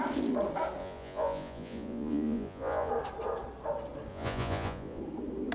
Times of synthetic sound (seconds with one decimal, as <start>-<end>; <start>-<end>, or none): 0.8-2.9; 4.1-5.0